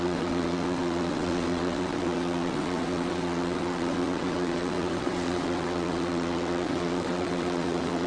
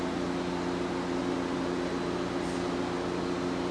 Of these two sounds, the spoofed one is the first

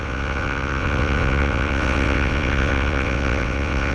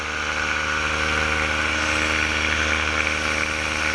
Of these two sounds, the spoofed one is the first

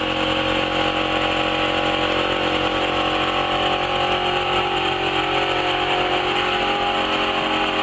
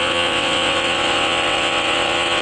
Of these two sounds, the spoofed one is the second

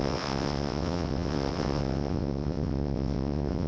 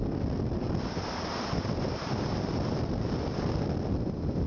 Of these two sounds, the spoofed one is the first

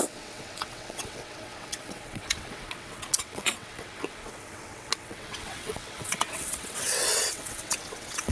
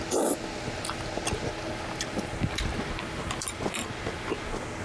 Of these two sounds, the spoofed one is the first